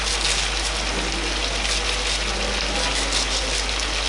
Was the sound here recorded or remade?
recorded